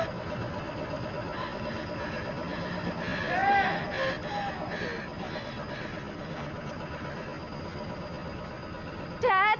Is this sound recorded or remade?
recorded